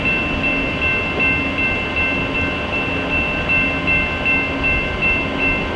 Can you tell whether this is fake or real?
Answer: real